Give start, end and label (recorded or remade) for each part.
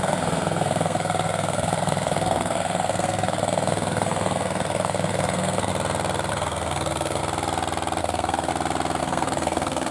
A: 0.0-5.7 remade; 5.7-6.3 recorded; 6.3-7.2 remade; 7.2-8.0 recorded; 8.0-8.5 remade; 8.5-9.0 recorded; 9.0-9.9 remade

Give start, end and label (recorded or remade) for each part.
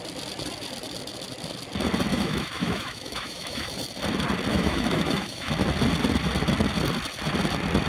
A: 0.0-2.1 recorded; 2.1-3.7 remade; 3.7-4.5 recorded; 4.5-5.5 remade; 5.5-7.9 recorded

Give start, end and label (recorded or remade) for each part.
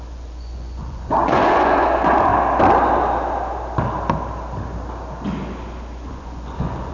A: 0.0-2.3 remade; 2.3-6.1 recorded; 6.1-6.9 remade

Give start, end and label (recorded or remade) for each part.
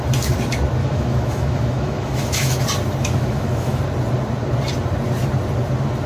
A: 0.0-0.8 recorded; 0.8-2.6 remade; 2.6-3.0 recorded; 3.0-3.8 remade; 3.8-6.1 recorded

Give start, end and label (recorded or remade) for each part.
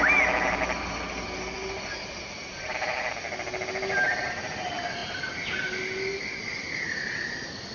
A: 0.0-7.7 recorded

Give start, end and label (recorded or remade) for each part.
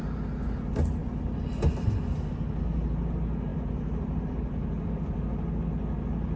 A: 0.0-1.0 recorded; 1.0-1.7 remade; 1.7-3.5 recorded; 3.5-5.4 remade; 5.4-6.4 recorded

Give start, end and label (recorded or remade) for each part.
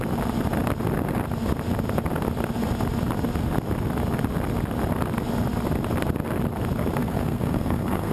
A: 0.0-7.0 recorded; 7.0-8.1 remade